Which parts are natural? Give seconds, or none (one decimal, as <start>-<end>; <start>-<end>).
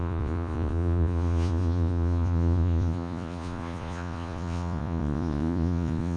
none